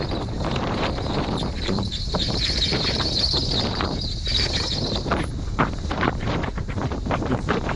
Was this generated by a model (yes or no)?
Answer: yes